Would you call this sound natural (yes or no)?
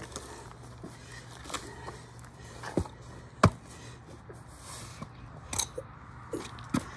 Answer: yes